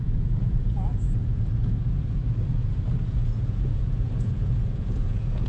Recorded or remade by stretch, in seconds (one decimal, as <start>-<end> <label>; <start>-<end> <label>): 0.0-2.2 remade; 2.2-3.0 recorded; 3.0-5.5 remade